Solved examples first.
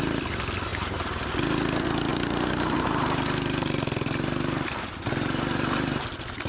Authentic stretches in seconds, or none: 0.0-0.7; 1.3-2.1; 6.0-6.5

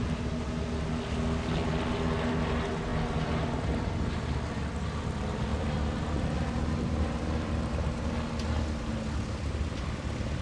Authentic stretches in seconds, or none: 0.0-5.5; 7.5-10.4

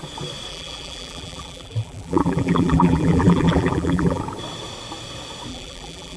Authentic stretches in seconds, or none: 0.0-0.5; 4.2-5.5

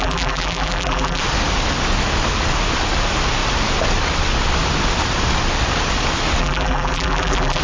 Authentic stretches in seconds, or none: 1.2-6.4

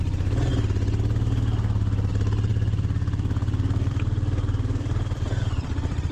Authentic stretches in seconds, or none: 0.5-2.1

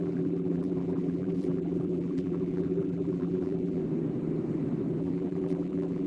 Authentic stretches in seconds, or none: 3.8-5.0